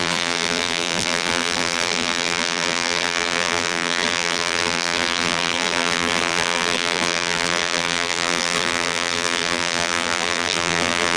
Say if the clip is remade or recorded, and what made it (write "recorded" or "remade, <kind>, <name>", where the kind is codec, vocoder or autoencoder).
remade, vocoder, BigVGAN v2